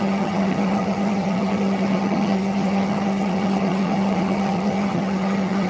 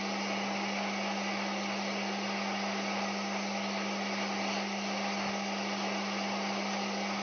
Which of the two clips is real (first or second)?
second